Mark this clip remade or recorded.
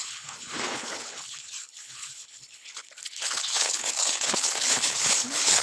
remade